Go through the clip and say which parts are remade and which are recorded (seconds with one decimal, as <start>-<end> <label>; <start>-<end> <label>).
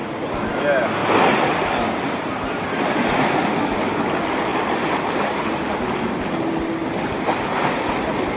0.0-1.0 recorded; 1.0-3.5 remade; 3.5-8.4 recorded